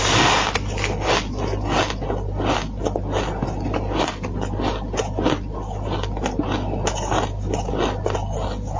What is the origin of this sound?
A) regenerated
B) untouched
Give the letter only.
B